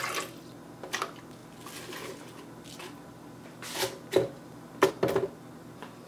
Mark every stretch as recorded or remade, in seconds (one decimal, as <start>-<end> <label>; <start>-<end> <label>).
0.0-6.1 recorded